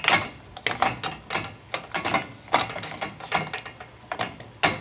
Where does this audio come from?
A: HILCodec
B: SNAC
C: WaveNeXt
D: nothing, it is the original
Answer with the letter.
D